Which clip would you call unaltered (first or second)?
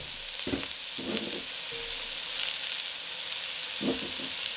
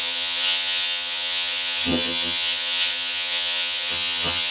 first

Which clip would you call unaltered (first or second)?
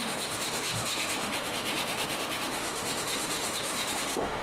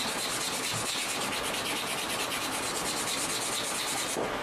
second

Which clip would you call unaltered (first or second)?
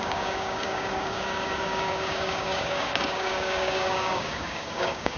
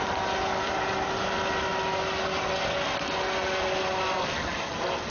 second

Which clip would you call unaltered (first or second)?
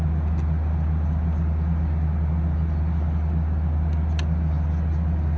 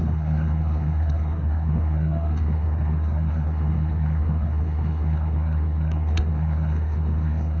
first